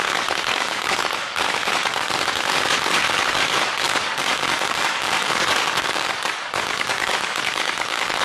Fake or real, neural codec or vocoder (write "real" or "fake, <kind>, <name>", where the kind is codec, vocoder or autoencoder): fake, codec, DAC